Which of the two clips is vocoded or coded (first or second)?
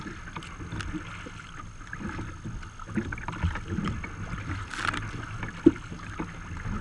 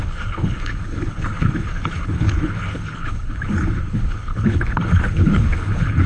second